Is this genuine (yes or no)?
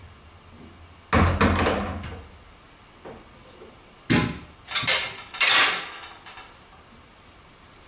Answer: yes